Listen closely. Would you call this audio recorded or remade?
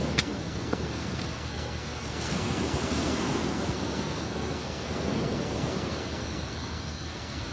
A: remade